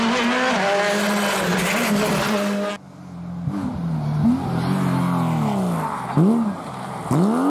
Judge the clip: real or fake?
real